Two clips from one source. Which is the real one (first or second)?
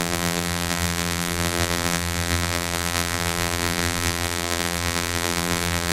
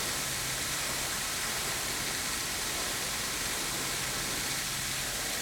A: second